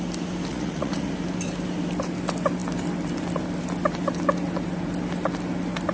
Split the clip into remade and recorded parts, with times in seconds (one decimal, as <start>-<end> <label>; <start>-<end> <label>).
0.0-0.5 recorded; 0.5-1.1 remade; 1.1-5.9 recorded